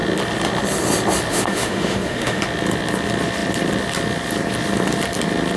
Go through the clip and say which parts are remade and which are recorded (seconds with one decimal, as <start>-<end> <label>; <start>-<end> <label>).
0.0-1.3 recorded; 1.3-2.4 remade; 2.4-5.6 recorded